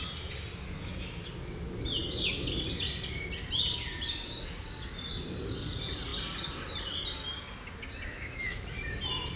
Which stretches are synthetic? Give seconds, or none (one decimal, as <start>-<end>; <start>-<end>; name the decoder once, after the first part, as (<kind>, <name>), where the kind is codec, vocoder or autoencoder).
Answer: 8.1-8.8 (autoencoder, DAC-VAE)